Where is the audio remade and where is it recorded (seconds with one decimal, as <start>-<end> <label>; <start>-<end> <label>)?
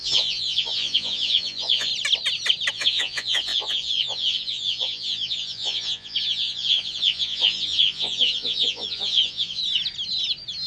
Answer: 0.0-1.9 remade; 1.9-2.7 recorded; 2.7-9.6 remade; 9.6-10.7 recorded